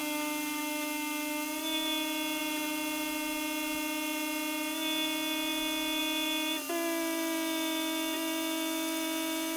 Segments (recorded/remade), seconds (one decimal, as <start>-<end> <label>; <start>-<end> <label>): 0.0-9.6 recorded